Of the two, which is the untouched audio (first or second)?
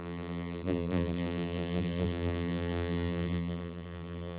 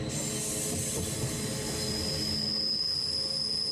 second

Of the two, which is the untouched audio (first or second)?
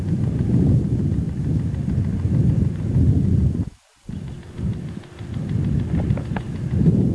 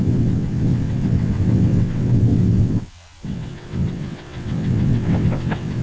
first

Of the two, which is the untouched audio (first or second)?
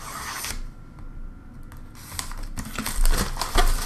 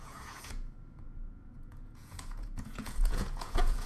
first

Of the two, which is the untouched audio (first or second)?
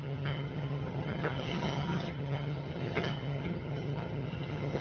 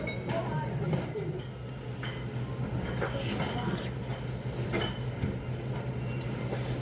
second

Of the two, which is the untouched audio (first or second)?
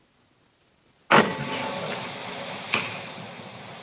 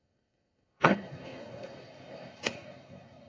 first